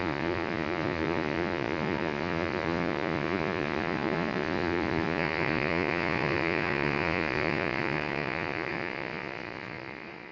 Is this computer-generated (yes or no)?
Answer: yes